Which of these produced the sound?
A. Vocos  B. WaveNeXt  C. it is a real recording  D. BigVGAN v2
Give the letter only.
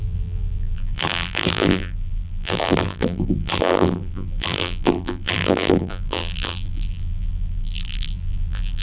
D